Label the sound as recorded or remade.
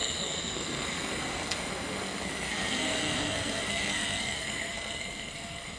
remade